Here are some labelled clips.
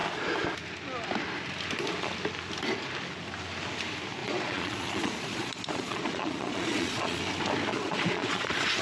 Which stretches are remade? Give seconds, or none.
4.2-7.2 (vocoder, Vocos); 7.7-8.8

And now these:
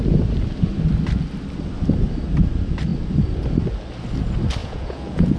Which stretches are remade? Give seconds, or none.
4.6-5.4 (vocoder, Vocos)

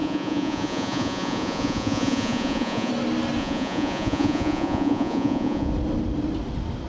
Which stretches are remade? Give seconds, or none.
0.0-2.9 (vocoder, Vocos); 3.4-5.7

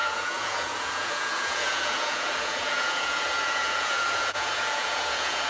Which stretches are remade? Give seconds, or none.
0.0-5.5 (vocoder, Vocos)

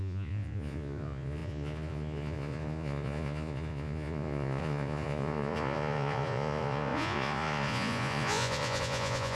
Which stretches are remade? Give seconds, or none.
0.0-9.3 (vocoder, Vocos)

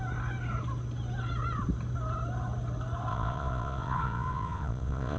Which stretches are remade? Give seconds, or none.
3.1-5.2 (vocoder, Vocos)